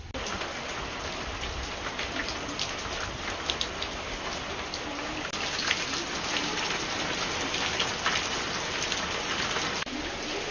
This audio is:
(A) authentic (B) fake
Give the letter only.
A